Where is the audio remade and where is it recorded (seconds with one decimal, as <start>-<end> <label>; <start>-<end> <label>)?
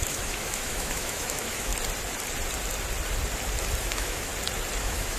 0.0-1.7 remade; 1.7-3.8 recorded; 3.8-4.3 remade; 4.3-4.8 recorded; 4.8-5.2 remade